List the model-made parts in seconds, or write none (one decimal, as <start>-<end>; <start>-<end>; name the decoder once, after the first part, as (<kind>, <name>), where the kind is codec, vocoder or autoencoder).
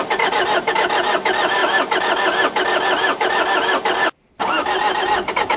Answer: none